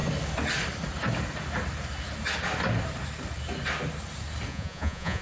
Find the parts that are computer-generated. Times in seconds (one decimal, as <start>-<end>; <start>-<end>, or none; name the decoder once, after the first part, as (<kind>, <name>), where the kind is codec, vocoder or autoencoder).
4.5-5.2 (vocoder, Vocos)